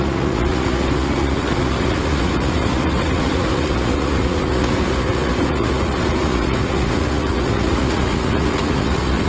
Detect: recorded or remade remade